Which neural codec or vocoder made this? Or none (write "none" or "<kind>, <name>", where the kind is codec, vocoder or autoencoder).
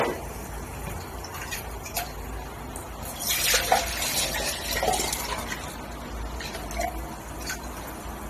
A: none